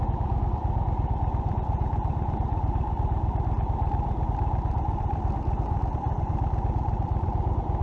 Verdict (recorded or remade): remade